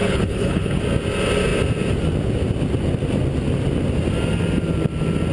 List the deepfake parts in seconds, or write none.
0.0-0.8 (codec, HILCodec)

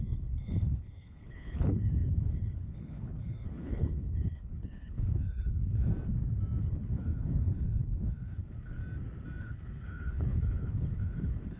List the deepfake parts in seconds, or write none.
0.0-5.9 (codec, HILCodec); 6.6-8.8; 9.4-11.6